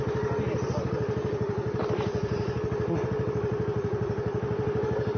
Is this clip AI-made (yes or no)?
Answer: no